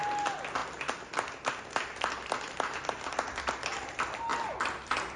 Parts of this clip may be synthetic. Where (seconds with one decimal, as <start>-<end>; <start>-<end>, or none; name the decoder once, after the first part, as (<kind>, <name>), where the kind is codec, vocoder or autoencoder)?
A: none